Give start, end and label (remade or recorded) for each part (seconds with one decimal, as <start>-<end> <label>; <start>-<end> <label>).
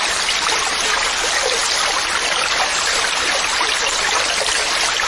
0.0-5.1 recorded